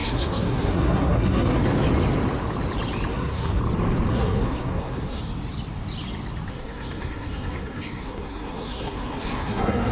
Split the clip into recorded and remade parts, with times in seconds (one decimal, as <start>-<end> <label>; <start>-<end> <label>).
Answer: 0.0-1.6 remade; 1.6-3.1 recorded; 3.1-3.6 remade; 3.6-4.1 recorded; 4.1-5.2 remade; 5.2-6.5 recorded; 6.5-9.9 remade